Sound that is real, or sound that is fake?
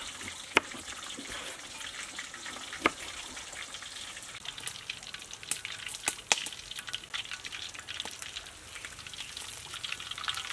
real